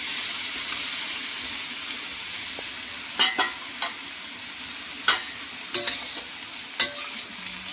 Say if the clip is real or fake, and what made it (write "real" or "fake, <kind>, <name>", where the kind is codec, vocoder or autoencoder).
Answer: real